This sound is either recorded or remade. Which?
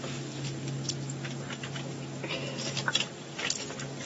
recorded